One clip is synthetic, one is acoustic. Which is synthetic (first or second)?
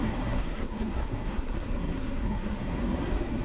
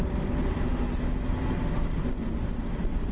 first